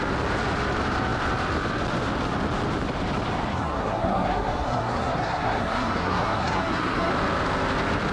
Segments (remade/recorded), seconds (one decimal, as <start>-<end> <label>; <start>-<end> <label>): 0.0-3.5 recorded; 3.5-7.1 remade; 7.1-8.1 recorded